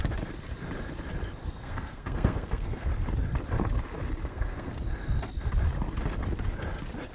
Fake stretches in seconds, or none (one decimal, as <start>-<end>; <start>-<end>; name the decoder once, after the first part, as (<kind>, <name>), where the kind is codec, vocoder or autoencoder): 1.4-2.9 (codec, SNAC); 4.2-4.7